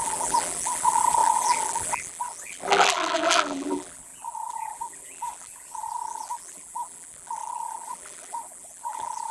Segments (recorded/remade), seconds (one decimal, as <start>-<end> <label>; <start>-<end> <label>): 0.0-9.3 remade